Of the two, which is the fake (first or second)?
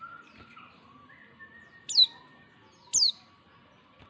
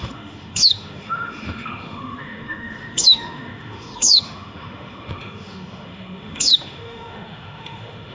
second